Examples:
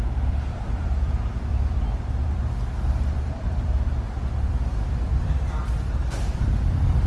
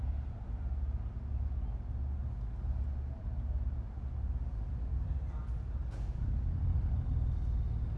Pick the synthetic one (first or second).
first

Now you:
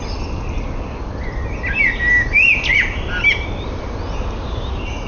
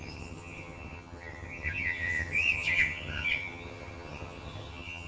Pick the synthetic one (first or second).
second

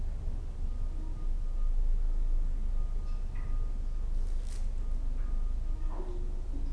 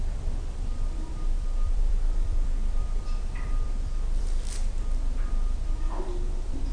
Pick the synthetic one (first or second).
second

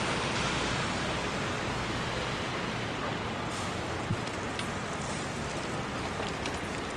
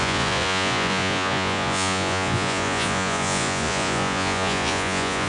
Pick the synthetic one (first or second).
second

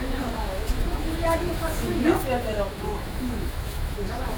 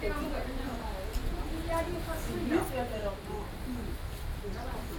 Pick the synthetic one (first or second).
first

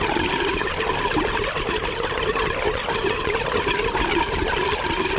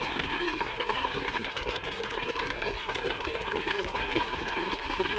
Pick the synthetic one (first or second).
second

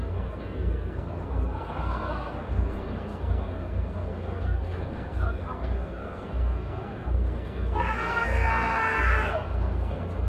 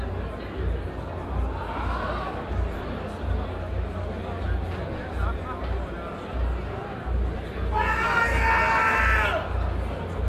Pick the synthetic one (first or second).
first